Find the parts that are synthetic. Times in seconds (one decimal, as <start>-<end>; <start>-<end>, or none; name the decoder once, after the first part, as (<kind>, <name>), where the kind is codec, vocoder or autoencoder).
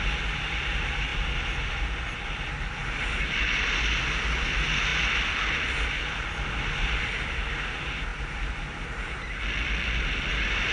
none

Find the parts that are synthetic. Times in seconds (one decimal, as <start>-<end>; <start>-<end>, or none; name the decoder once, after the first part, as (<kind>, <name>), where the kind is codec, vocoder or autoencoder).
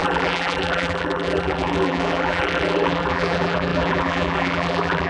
0.0-5.1 (vocoder, BigVGAN v2)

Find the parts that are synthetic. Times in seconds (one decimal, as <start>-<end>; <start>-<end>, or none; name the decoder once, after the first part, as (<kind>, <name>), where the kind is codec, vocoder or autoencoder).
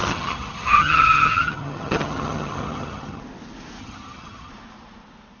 0.0-3.2 (vocoder, HiFi-GAN); 3.8-4.5